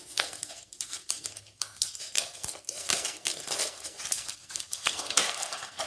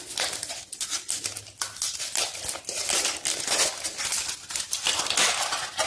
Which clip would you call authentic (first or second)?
second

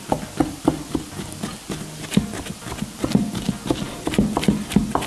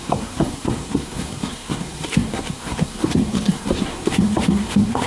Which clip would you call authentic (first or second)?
first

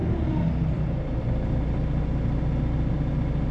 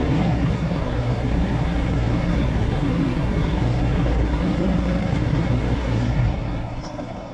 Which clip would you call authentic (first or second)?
first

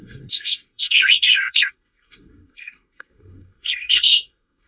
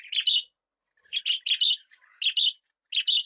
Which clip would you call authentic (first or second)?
second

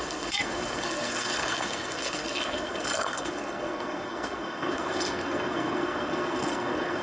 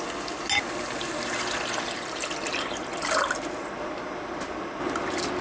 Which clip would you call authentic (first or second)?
second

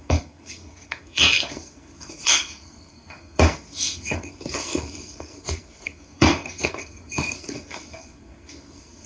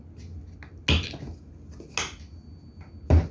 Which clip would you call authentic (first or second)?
second